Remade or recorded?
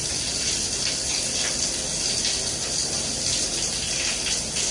recorded